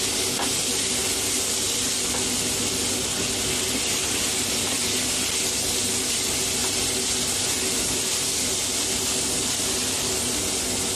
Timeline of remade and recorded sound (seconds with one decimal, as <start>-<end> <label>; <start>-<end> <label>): 0.0-11.0 recorded